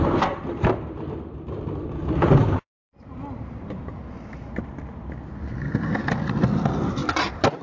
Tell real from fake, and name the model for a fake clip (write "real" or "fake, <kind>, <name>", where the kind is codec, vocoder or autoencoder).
real